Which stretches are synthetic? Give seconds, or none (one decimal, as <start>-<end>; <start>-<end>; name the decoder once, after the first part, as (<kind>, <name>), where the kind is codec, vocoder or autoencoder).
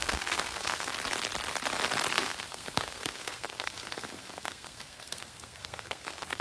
0.0-0.9 (codec, SNAC); 2.1-6.4